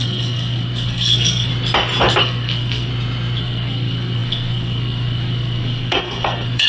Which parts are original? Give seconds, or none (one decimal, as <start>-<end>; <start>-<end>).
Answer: 1.5-2.2; 2.9-3.4